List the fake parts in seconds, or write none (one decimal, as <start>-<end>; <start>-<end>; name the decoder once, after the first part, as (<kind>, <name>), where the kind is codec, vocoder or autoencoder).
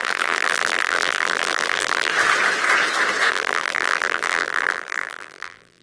0.0-2.1 (vocoder, BigVGAN v2); 3.3-5.8